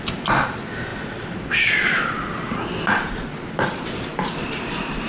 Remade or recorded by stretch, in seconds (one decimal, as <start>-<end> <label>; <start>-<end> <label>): 0.0-5.1 recorded